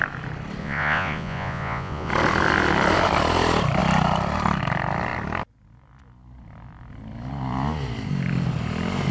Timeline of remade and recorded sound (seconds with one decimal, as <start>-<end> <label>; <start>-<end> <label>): 0.0-0.6 recorded; 0.6-2.1 remade; 2.1-9.1 recorded